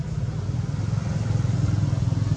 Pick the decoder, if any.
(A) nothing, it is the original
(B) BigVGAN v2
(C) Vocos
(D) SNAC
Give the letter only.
A